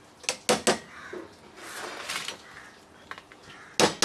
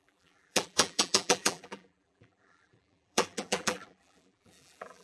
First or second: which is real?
first